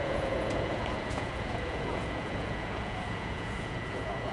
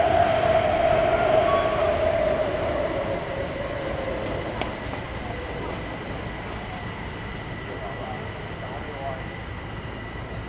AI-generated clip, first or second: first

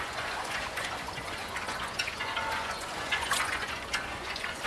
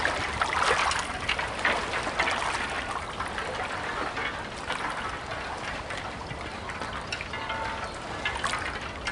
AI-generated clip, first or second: first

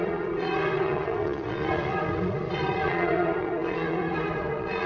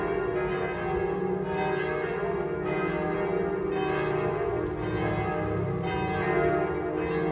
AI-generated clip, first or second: first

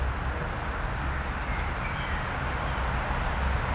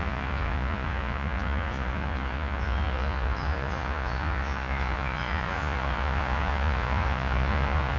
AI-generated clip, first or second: second